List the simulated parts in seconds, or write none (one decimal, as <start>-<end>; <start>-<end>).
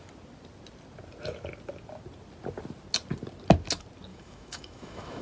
4.1-5.2